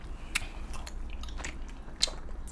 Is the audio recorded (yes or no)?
yes